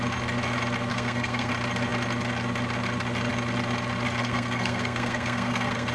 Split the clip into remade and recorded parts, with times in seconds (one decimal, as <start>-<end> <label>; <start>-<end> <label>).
0.0-0.9 recorded; 0.9-1.5 remade; 1.5-4.2 recorded; 4.2-5.9 remade